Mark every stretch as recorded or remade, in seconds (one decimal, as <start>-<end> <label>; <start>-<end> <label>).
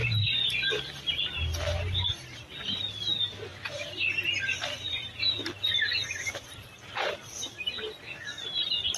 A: 0.0-1.1 remade; 1.1-3.5 recorded; 3.5-7.5 remade; 7.5-9.0 recorded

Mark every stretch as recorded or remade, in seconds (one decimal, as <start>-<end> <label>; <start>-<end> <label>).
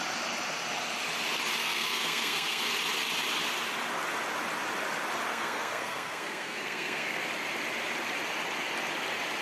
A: 0.0-1.6 recorded; 1.6-2.6 remade; 2.6-5.3 recorded; 5.3-7.2 remade; 7.2-9.4 recorded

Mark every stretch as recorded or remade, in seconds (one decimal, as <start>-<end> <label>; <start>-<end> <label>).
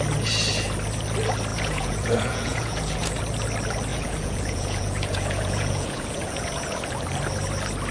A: 0.0-1.5 recorded; 1.5-3.2 remade; 3.2-3.9 recorded; 3.9-6.9 remade; 6.9-7.9 recorded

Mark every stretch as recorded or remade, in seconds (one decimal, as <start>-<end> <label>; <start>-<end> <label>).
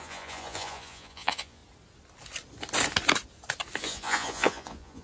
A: 0.0-1.6 remade; 1.6-3.8 recorded; 3.8-5.0 remade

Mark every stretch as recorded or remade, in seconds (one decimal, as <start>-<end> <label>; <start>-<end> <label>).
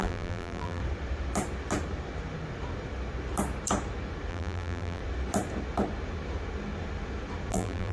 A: 0.0-0.8 remade; 0.8-4.3 recorded; 4.3-5.0 remade; 5.0-7.5 recorded; 7.5-7.9 remade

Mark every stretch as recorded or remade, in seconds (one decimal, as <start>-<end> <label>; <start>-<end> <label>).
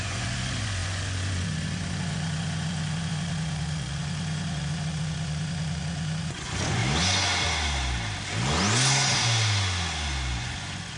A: 0.0-6.8 remade; 6.8-10.4 recorded; 10.4-11.0 remade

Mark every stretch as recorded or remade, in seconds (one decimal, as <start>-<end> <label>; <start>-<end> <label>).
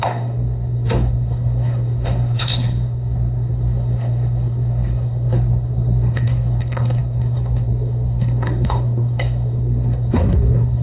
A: 0.0-10.8 remade